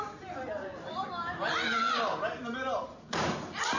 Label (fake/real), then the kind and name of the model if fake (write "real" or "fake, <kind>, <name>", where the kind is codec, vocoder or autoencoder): real